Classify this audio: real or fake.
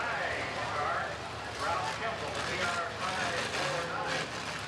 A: real